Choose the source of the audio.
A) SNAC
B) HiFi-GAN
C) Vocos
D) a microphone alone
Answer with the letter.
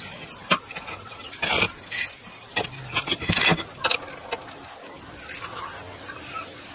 D